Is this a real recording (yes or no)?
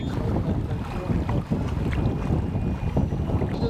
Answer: yes